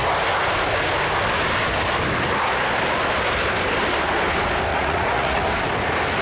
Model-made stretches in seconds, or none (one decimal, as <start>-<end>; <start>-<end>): 4.7-5.4